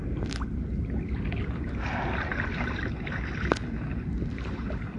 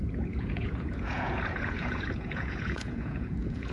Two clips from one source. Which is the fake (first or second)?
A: second